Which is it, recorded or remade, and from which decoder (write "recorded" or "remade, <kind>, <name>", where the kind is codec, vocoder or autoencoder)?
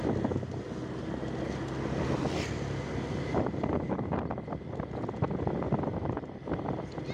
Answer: recorded